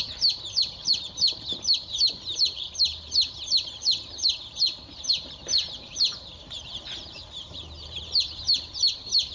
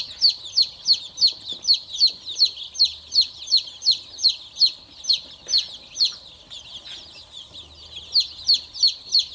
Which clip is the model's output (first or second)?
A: first